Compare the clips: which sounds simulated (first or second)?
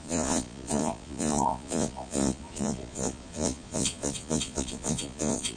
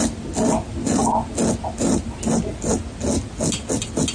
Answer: first